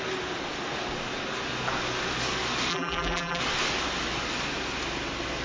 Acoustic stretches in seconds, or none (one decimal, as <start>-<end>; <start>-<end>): 0.0-2.7; 3.4-5.4